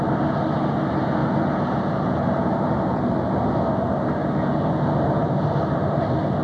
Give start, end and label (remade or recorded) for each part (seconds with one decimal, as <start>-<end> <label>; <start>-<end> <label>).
0.0-1.2 recorded; 1.2-3.0 remade; 3.0-4.2 recorded; 4.2-4.7 remade; 4.7-5.2 recorded; 5.2-6.0 remade; 6.0-6.4 recorded